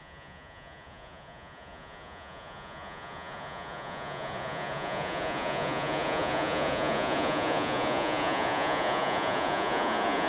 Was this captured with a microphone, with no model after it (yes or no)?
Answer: no